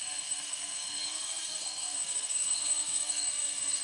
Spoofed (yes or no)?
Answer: yes